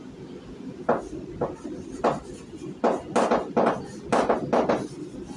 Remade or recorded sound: recorded